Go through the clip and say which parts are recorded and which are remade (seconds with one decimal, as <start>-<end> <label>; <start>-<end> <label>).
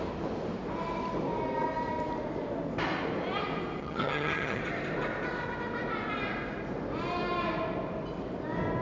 0.0-3.8 recorded; 3.8-4.6 remade; 4.6-8.8 recorded